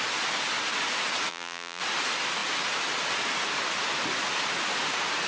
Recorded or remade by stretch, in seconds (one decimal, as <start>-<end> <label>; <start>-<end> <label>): 0.0-1.3 recorded; 1.3-1.8 remade; 1.8-5.3 recorded